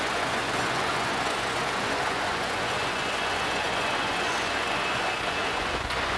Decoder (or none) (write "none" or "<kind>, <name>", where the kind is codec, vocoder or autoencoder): vocoder, Vocos